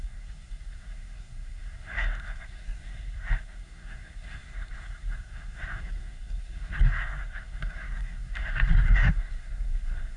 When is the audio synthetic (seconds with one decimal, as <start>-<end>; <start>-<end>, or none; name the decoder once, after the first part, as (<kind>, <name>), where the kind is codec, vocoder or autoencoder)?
0.0-10.2 (codec, SNAC)